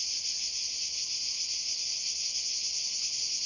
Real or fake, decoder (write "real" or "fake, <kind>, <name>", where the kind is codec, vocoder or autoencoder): real